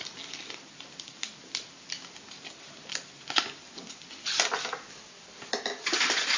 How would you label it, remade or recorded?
recorded